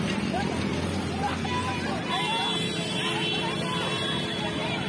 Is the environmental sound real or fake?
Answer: real